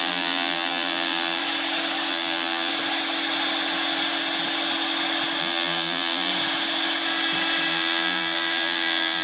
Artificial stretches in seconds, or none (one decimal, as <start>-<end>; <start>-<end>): 0.0-1.4; 2.1-2.7; 5.4-6.3; 7.7-9.2

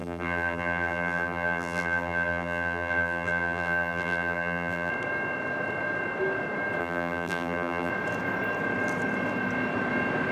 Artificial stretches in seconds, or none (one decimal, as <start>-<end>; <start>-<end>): 0.0-4.9; 6.8-7.9

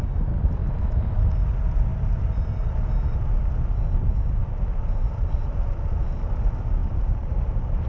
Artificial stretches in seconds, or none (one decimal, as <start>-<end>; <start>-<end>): 0.6-1.3; 6.8-7.9

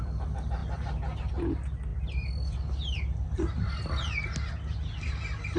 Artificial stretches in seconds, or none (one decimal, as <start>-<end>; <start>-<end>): none

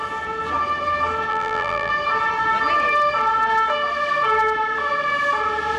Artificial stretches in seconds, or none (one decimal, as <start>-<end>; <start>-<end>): 1.3-1.9

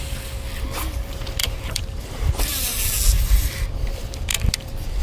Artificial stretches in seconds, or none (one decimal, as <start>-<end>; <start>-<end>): 1.4-2.0; 2.5-3.5

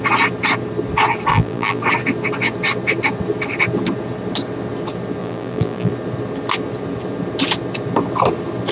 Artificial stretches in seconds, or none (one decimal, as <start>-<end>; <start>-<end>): 1.3-1.8; 5.2-5.9

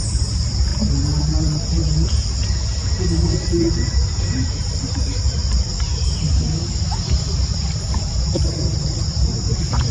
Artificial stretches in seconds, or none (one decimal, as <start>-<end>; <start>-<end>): 0.0-0.7; 1.4-1.8; 4.2-9.9